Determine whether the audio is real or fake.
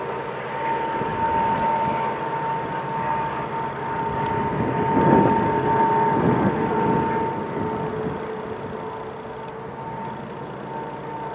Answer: real